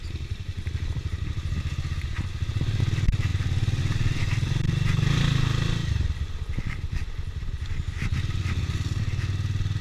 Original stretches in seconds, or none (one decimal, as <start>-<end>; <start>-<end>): 0.0-9.8